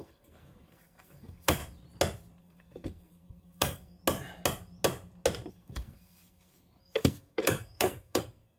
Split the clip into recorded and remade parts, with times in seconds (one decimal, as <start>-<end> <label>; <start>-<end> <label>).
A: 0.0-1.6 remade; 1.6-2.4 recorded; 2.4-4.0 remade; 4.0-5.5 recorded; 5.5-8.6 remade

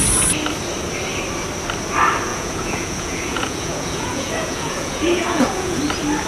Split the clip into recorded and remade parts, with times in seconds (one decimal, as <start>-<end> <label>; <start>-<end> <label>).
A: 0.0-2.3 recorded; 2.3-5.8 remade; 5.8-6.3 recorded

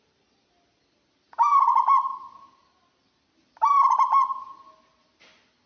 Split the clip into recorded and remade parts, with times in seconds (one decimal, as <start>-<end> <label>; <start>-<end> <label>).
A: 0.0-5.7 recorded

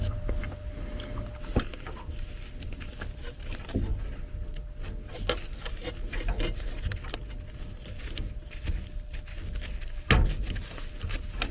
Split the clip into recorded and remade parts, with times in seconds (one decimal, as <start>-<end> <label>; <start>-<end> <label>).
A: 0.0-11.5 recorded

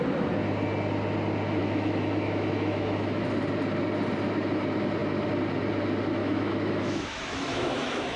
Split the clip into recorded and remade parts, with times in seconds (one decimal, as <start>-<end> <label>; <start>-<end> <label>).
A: 0.0-1.6 recorded; 1.6-3.2 remade; 3.2-6.2 recorded; 6.2-8.2 remade

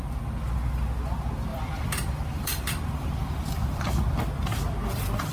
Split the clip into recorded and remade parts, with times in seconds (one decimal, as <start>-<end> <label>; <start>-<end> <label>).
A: 0.0-1.5 recorded; 1.5-3.9 remade; 3.9-5.3 recorded

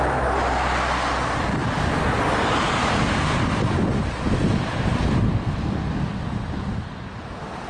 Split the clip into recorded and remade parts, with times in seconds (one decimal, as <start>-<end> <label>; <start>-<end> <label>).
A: 0.0-7.7 recorded